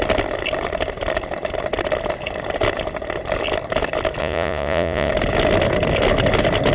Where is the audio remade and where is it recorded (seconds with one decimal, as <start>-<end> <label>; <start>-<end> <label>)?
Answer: 0.0-4.2 recorded; 4.2-5.1 remade; 5.1-6.7 recorded